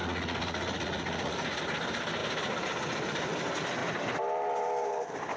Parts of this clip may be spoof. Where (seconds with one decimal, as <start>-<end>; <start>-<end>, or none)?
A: 0.0-1.6